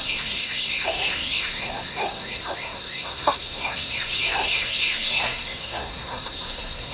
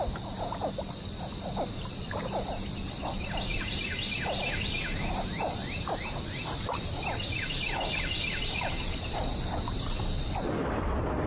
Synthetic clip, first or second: first